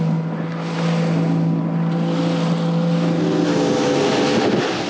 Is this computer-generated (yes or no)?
no